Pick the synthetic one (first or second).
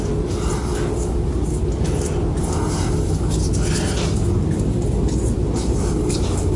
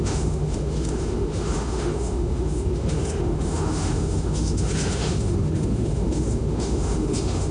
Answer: second